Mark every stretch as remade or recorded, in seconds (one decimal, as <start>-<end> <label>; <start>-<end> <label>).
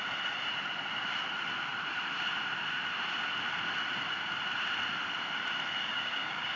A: 0.0-5.8 recorded; 5.8-6.6 remade